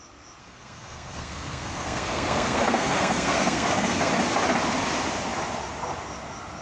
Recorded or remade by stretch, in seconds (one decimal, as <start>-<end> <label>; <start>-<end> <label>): 0.0-0.4 recorded; 0.4-4.1 remade; 4.1-6.6 recorded